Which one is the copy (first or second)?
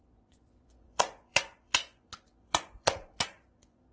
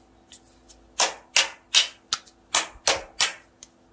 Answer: first